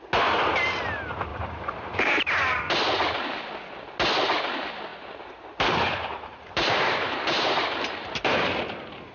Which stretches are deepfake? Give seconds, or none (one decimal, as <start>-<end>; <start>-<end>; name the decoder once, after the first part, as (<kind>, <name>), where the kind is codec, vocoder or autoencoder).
1.3-2.6 (vocoder, BigVGAN v2); 4.9-9.1